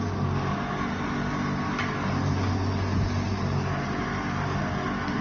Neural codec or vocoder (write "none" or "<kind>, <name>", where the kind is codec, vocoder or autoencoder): none